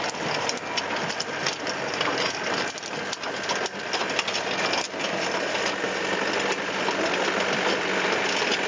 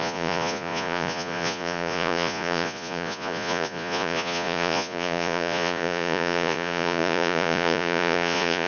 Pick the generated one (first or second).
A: second